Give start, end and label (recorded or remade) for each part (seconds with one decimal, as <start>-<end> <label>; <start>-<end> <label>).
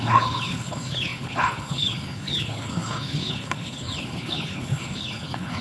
0.0-5.6 remade